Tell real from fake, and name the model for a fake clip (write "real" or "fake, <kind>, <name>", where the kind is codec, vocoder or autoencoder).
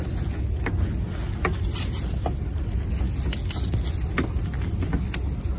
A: real